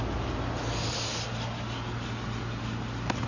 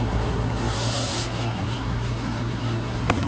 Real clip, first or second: first